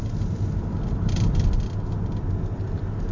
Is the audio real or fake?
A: fake